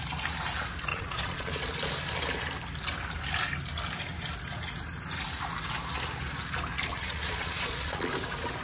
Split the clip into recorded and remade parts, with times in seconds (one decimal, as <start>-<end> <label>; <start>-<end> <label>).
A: 0.0-0.9 recorded; 0.9-1.5 remade; 1.5-6.9 recorded; 6.9-8.1 remade; 8.1-8.6 recorded